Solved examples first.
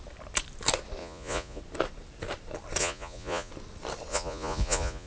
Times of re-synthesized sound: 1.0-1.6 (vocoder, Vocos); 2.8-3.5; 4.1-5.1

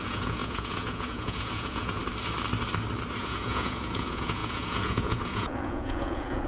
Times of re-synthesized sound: 0.0-2.0 (vocoder, Vocos); 3.2-6.5

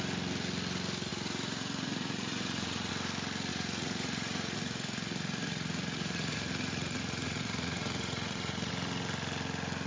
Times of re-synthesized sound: 1.1-2.9 (vocoder, Vocos); 3.5-8.7

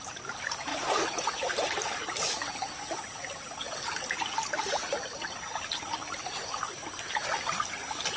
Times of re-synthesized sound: 0.7-1.3 (vocoder, Vocos)

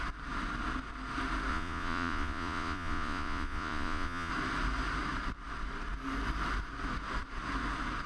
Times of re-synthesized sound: 1.5-4.3 (vocoder, Vocos)

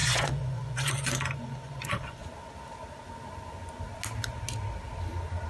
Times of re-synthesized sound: 0.0-2.2 (vocoder, Vocos)

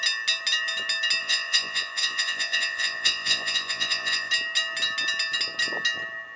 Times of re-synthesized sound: 1.2-4.3 (vocoder, Vocos)

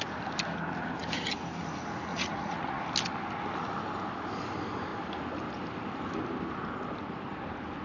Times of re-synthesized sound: 2.1-2.8 (vocoder, Vocos)